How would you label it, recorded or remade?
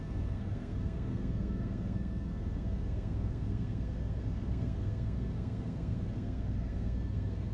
remade